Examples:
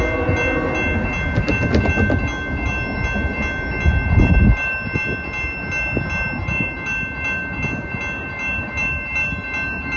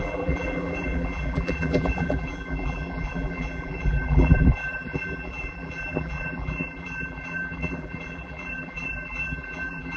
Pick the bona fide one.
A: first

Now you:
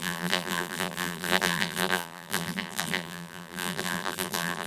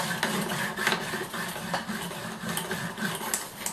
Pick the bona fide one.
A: second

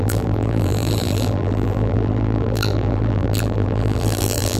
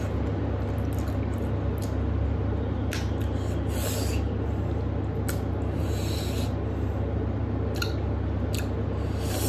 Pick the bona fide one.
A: second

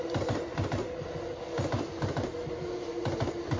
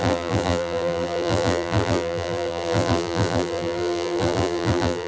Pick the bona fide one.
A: first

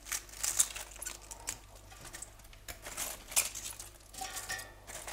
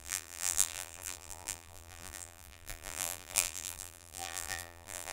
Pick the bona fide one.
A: first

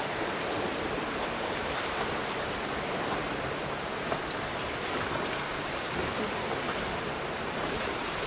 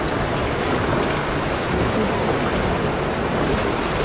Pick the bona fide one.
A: second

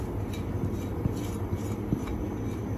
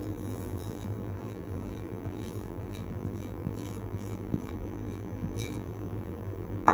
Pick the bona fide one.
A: first